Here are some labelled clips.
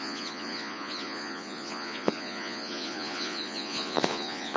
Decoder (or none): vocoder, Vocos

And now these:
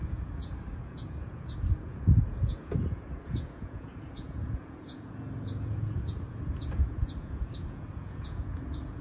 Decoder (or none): vocoder, Vocos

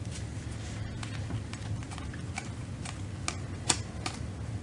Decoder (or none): none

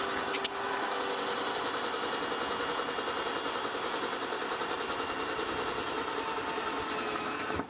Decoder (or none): none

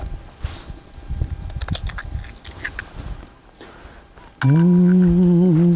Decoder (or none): none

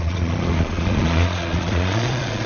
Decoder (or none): vocoder, Vocos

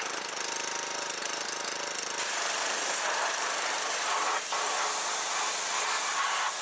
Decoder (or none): vocoder, BigVGAN v2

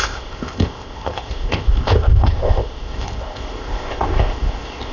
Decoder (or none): codec, ZipCodec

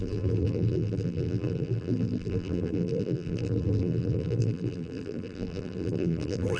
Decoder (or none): vocoder, BigVGAN v2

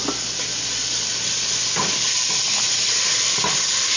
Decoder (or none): none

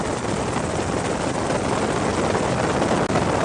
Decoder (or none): none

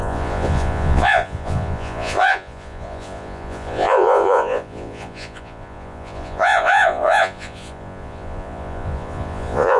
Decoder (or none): vocoder, Vocos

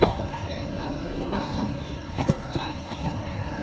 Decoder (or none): codec, SNAC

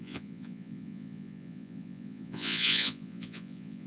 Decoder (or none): vocoder, Vocos